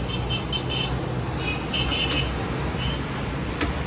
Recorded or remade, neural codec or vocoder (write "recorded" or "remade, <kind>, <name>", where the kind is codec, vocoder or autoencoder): recorded